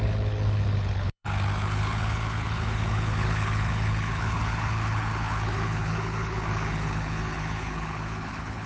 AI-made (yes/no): yes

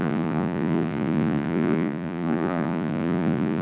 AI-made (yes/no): yes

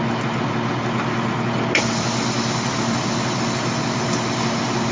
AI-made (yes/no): no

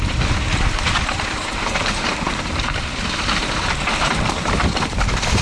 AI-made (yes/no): yes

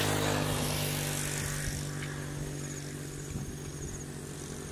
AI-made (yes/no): no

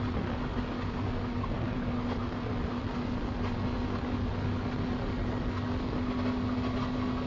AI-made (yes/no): no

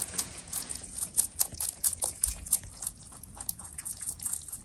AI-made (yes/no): yes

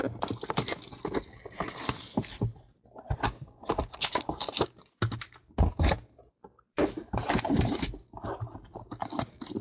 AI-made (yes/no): no